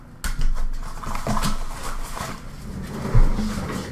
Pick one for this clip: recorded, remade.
recorded